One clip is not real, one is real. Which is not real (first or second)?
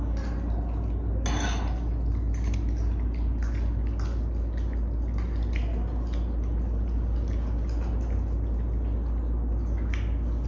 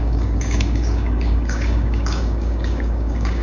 second